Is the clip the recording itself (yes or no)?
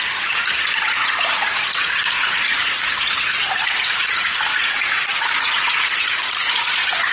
no